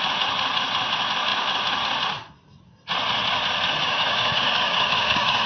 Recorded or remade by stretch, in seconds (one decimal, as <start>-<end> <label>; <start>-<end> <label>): 0.0-3.8 recorded; 3.8-5.5 remade